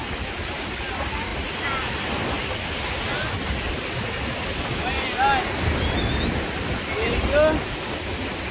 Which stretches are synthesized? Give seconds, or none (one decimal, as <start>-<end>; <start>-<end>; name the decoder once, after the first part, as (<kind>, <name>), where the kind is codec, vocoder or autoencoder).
none